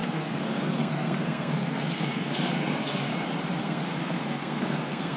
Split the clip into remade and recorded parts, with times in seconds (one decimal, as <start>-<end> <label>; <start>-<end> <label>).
0.0-3.1 remade; 3.1-3.6 recorded; 3.6-5.2 remade